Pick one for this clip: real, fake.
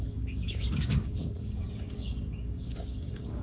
fake